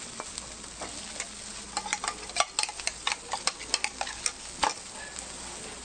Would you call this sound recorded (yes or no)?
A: yes